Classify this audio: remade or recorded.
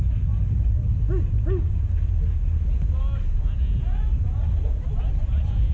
recorded